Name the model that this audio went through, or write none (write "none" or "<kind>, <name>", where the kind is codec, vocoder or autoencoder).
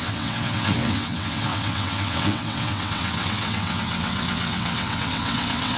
vocoder, WaveNeXt